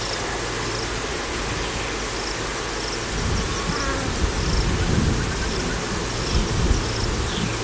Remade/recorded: recorded